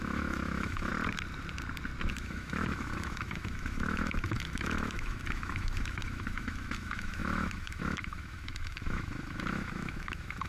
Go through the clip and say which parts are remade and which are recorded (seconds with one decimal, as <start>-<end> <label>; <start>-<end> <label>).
0.0-0.9 remade; 0.9-2.1 recorded; 2.1-10.5 remade